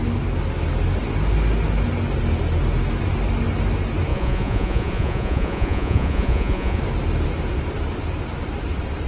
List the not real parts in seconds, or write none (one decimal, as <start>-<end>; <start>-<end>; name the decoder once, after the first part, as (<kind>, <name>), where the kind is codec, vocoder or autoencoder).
4.1-6.8 (vocoder, Vocos)